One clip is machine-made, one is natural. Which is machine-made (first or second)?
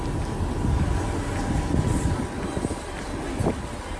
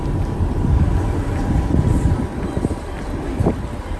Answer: second